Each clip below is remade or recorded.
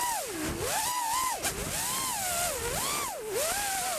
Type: recorded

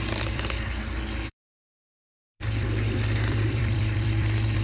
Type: remade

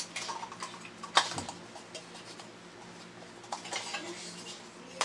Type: recorded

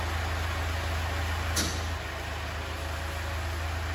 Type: recorded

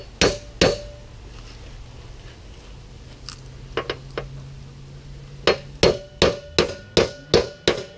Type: recorded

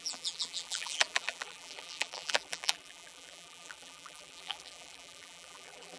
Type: remade